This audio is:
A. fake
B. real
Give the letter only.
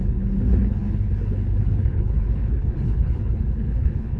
A